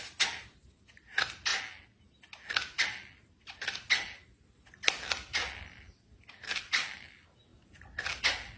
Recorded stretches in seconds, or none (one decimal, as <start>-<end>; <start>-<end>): 0.0-8.6